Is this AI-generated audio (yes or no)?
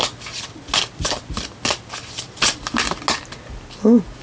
no